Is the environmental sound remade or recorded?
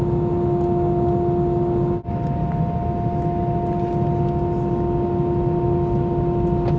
recorded